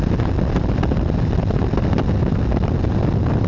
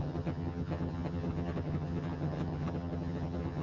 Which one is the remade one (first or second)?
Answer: second